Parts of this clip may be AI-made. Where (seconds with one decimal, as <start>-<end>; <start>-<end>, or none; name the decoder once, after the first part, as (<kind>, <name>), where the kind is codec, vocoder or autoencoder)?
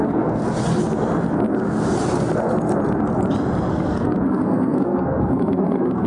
0.0-0.4 (codec, SNAC); 3.7-6.1